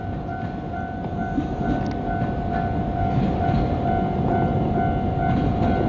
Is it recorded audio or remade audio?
recorded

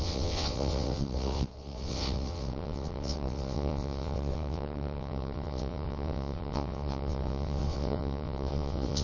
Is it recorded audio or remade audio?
remade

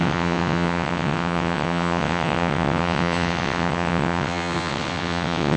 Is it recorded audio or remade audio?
remade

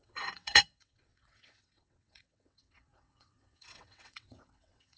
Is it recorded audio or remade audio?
remade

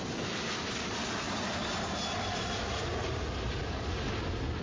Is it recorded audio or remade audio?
recorded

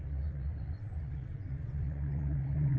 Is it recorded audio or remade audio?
remade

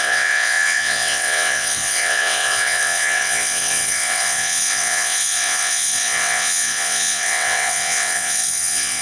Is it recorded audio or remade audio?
remade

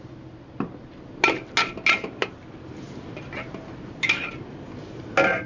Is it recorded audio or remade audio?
recorded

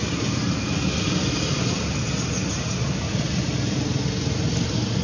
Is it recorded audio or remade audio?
recorded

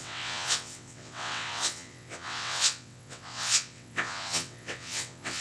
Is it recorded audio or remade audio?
remade